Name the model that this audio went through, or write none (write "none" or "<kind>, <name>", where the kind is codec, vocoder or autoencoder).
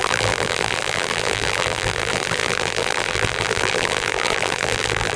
vocoder, BigVGAN v2